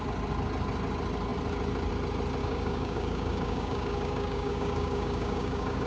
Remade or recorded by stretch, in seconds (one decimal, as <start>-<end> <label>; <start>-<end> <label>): 0.0-2.4 recorded; 2.4-5.9 remade